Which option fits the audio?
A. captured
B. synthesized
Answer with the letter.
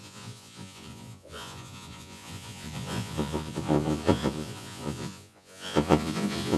B